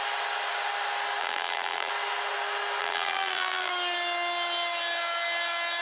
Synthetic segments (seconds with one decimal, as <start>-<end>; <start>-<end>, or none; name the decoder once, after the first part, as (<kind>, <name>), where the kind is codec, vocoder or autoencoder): 1.2-1.9 (vocoder, BigVGAN v2); 2.8-3.7